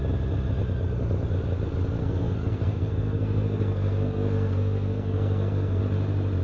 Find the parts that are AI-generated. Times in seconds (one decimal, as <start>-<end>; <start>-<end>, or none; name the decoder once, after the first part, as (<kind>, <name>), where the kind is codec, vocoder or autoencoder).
2.0-5.8 (codec, SNAC)